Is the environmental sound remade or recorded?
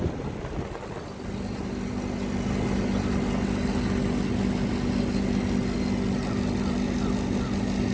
recorded